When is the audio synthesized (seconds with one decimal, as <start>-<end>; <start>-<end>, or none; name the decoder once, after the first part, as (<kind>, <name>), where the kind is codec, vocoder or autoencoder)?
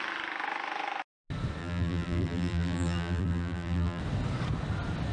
1.6-4.0 (vocoder, BigVGAN v2)